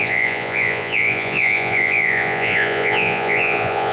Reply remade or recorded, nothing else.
remade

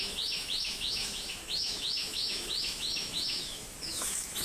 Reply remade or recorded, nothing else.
remade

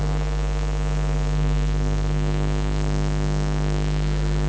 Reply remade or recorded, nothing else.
remade